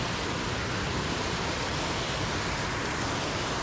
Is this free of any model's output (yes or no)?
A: yes